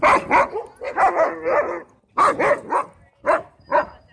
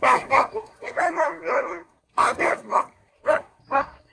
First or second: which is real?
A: first